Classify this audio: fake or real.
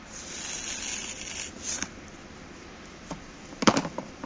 real